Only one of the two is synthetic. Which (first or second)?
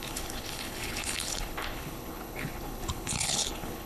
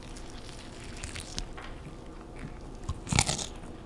first